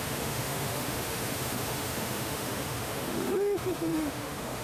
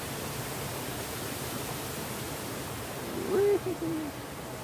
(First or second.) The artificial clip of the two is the first